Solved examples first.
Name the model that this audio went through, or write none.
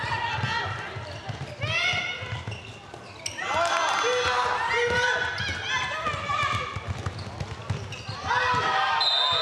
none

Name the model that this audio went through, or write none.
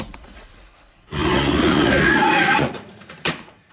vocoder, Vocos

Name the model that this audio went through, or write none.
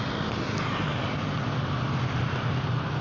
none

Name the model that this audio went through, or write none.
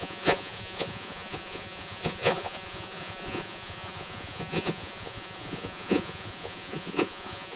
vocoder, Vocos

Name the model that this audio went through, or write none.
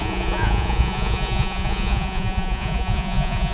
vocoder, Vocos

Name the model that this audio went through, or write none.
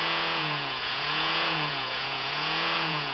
vocoder, Vocos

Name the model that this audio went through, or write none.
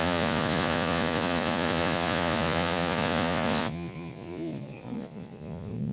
vocoder, Vocos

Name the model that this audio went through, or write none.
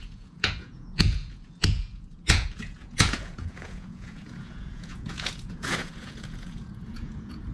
vocoder, Vocos